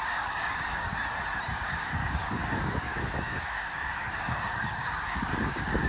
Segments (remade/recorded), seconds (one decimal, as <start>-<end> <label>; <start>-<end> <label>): 0.0-0.9 remade; 0.9-1.5 recorded; 1.5-5.9 remade